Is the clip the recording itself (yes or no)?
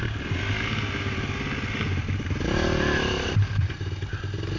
yes